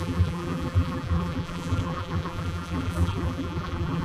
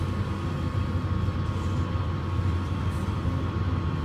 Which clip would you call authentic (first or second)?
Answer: second